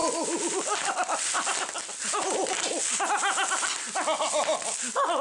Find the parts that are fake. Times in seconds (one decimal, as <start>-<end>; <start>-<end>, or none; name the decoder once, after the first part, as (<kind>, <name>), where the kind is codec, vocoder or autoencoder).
none